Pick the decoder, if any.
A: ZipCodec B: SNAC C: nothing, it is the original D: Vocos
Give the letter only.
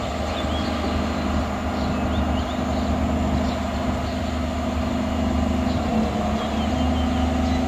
C